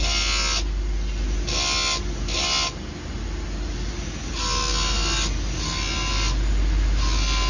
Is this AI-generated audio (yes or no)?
no